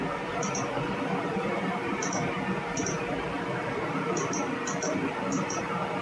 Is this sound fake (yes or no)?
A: yes